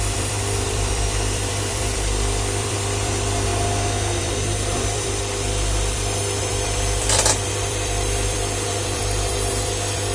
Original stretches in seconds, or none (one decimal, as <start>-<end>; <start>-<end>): 3.5-4.2